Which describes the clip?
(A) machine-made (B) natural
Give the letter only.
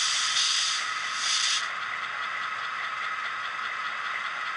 B